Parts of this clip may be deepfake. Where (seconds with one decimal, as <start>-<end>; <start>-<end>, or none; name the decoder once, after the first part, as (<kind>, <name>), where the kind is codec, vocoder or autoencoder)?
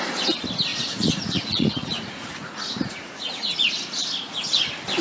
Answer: 0.7-3.7 (vocoder, Vocos)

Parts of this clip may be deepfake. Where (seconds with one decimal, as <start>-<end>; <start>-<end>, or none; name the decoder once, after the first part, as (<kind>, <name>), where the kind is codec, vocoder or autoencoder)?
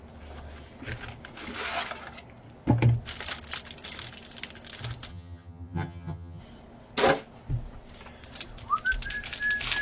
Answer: 5.1-6.4 (vocoder, HiFi-GAN)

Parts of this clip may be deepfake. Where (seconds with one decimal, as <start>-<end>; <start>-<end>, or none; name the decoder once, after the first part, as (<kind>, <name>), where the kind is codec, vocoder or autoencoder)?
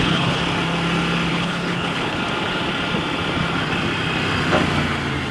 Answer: 0.0-0.4 (codec, HILCodec); 1.3-2.2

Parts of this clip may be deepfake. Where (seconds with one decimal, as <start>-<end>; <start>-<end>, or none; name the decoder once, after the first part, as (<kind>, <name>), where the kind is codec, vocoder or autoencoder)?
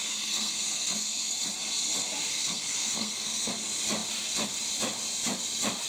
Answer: 0.0-1.3 (codec, SNAC); 2.3-3.5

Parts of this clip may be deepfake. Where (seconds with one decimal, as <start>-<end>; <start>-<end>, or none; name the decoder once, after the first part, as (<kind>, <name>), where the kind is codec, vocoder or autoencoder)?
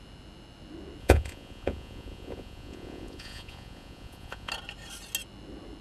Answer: 1.0-4.5 (vocoder, Vocos)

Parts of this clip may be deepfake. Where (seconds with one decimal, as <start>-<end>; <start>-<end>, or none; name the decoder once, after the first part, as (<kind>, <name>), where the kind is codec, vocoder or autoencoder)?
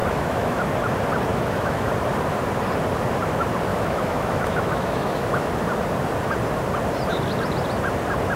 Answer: 0.0-0.6 (autoencoder, DAC-VAE); 1.3-1.9; 3.7-5.5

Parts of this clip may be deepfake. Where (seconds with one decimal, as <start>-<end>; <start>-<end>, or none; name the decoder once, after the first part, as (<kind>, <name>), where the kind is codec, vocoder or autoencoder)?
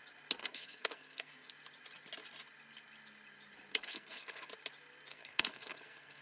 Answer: 0.4-1.5 (codec, SNAC); 3.7-4.5; 5.1-6.2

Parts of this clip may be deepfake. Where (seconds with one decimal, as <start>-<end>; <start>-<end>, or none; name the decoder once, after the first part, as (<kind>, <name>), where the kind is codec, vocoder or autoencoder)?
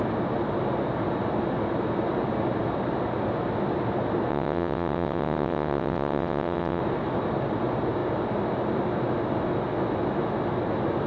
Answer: 4.3-6.8 (vocoder, WaveNeXt)